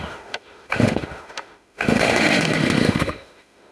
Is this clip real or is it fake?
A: fake